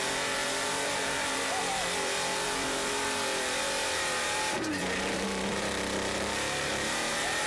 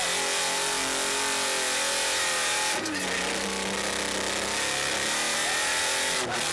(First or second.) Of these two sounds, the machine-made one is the first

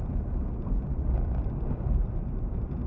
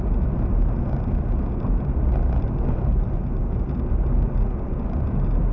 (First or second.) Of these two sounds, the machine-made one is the first